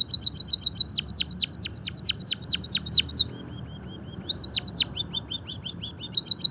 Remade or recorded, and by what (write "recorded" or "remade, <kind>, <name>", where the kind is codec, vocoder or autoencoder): remade, vocoder, BigVGAN v2